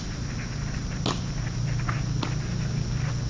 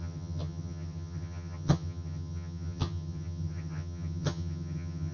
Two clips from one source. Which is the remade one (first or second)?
second